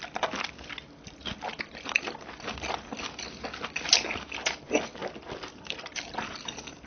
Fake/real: real